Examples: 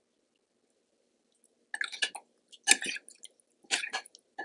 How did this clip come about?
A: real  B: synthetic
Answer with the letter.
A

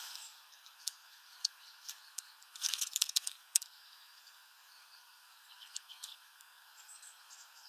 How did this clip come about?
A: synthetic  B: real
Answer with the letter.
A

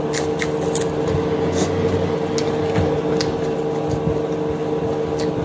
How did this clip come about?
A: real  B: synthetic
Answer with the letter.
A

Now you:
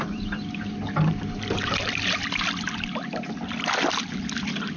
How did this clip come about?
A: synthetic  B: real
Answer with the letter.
B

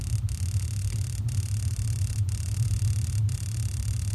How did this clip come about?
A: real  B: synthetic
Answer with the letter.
A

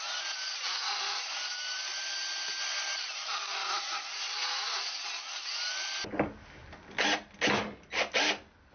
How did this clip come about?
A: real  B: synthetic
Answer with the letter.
A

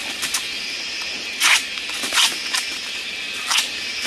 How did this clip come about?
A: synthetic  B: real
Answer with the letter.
B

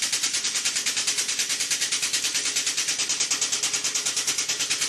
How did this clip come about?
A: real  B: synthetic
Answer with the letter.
A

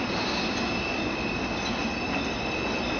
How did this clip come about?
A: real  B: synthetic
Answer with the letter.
A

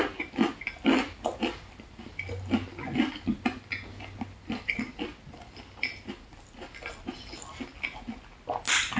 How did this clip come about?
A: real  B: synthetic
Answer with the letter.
A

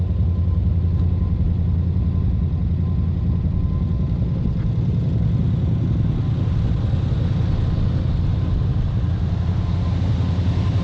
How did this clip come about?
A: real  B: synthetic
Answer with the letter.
A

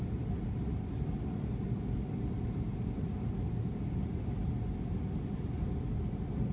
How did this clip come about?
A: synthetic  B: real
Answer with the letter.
B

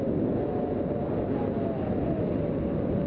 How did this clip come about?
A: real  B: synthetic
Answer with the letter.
A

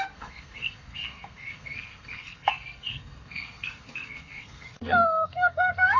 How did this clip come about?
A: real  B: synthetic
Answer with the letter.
B